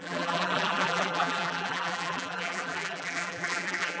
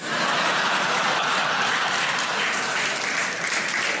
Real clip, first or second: second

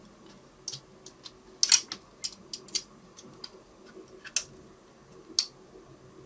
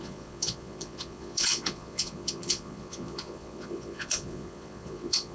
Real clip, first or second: first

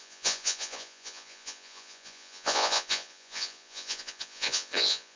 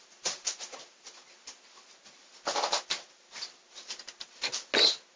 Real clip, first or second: second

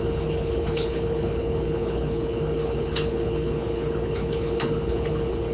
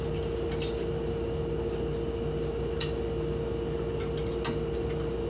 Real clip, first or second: second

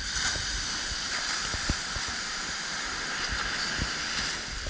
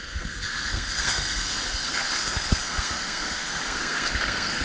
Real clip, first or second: first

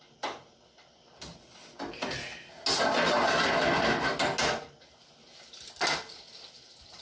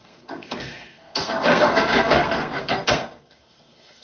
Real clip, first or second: first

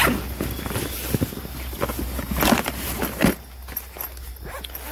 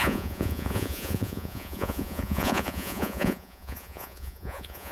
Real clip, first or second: first